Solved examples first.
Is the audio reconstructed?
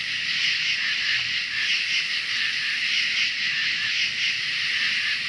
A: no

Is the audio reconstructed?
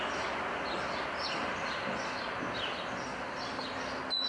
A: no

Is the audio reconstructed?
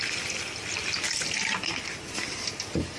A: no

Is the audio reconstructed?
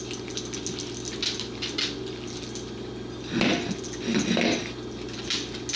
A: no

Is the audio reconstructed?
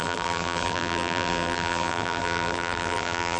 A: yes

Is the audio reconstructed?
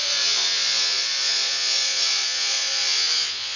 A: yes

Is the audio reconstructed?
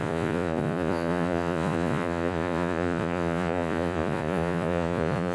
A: yes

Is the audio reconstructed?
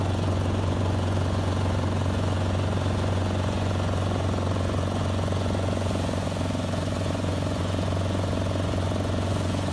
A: yes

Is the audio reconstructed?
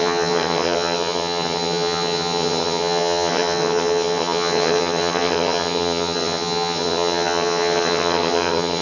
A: yes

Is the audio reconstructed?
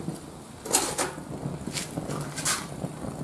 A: no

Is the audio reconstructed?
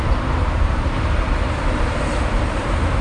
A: yes